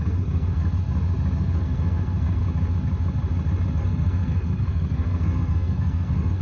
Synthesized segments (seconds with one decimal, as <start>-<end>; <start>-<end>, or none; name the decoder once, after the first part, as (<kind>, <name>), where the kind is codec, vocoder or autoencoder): 0.0-0.6 (codec, SNAC); 1.4-2.4; 3.8-6.4